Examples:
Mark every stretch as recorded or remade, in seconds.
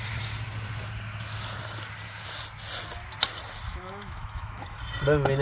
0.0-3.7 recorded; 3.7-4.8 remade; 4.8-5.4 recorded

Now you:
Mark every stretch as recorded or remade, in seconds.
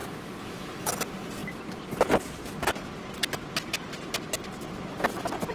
0.0-0.9 remade; 0.9-5.5 recorded